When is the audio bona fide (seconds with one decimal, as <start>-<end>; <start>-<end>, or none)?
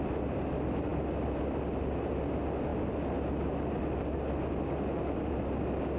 0.0-6.0